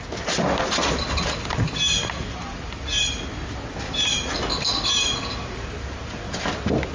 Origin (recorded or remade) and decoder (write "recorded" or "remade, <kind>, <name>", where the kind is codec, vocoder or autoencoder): recorded